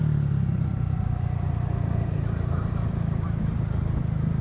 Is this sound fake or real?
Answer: fake